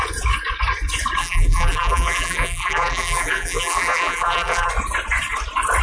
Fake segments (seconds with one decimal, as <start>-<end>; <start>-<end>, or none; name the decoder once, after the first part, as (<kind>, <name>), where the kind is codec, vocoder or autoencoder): 1.2-4.7 (vocoder, BigVGAN v2)